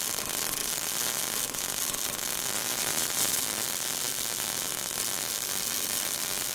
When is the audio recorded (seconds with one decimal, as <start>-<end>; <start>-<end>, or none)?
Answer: 0.0-2.7; 3.4-6.5